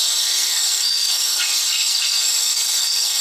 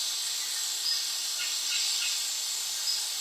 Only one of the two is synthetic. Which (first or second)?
first